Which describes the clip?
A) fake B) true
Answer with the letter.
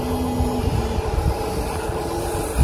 B